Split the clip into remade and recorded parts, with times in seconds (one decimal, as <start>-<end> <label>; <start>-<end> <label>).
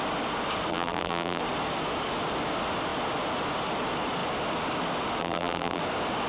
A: 0.0-0.7 recorded; 0.7-1.4 remade; 1.4-5.2 recorded; 5.2-5.8 remade; 5.8-6.3 recorded